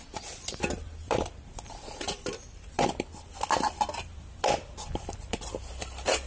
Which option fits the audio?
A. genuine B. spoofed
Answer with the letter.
B